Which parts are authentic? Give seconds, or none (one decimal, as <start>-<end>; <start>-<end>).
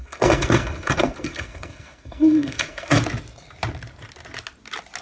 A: 3.0-5.0